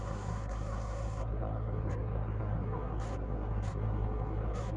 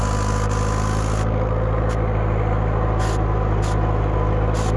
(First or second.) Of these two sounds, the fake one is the first